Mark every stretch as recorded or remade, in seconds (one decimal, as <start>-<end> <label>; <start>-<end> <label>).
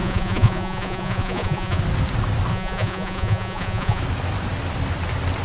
0.0-1.8 remade; 1.8-2.5 recorded; 2.5-4.0 remade; 4.0-5.4 recorded